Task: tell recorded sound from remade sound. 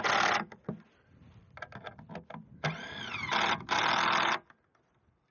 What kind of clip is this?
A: recorded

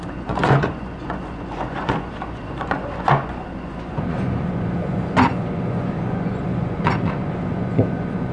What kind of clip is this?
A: remade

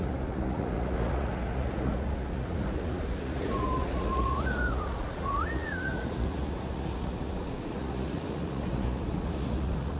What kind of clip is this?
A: remade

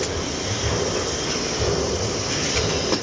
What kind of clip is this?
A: recorded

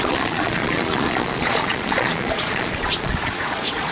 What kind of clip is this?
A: remade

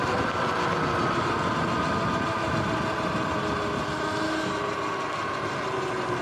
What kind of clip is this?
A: recorded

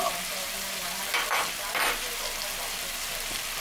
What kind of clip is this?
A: recorded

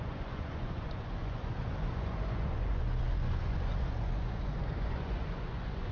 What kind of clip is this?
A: remade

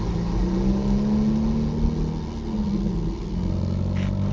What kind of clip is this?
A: recorded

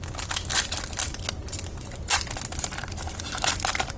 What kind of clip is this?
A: recorded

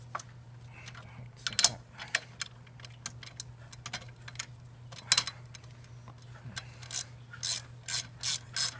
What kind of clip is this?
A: recorded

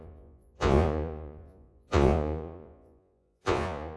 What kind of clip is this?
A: remade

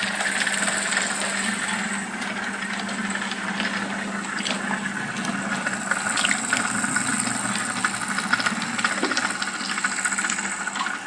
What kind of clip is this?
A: recorded